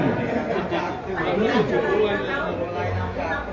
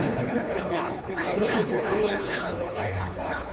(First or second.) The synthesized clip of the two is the second